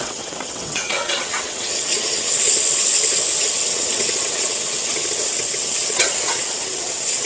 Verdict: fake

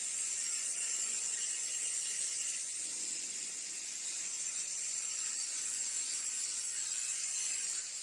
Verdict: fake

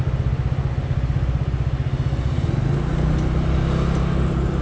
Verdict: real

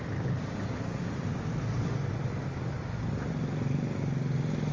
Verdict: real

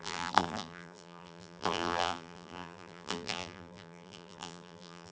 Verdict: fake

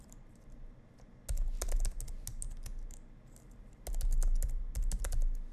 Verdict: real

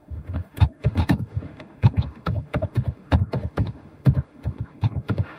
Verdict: fake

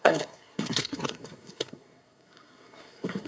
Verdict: fake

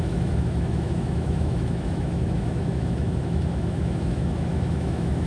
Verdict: fake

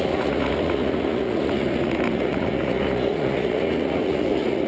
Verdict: fake